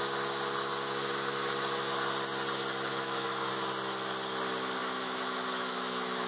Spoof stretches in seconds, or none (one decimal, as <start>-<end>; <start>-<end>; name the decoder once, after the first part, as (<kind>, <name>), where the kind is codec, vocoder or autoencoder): 2.9-3.5 (autoencoder, DAC-VAE); 4.8-6.3